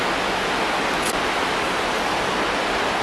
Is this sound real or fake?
real